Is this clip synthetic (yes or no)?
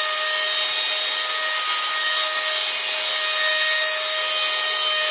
no